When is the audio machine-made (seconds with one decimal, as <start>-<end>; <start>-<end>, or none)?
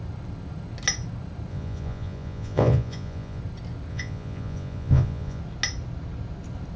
1.5-3.4; 3.9-5.4